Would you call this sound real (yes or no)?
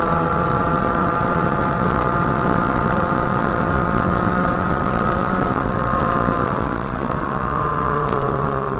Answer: no